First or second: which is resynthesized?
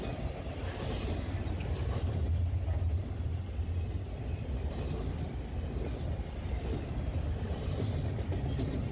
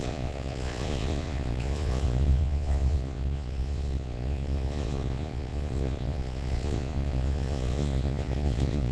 second